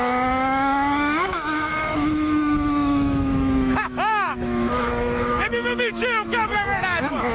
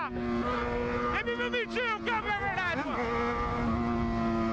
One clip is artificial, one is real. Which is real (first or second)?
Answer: second